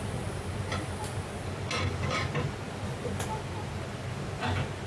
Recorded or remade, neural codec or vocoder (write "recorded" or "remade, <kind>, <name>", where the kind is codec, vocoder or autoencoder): recorded